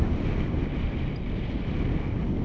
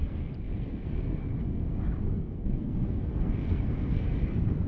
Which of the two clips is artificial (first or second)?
second